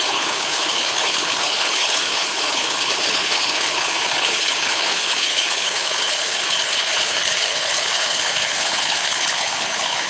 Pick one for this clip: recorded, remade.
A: remade